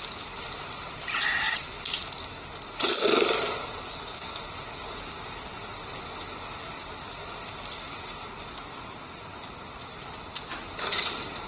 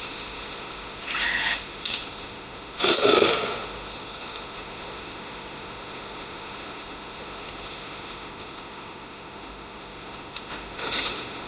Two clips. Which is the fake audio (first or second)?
second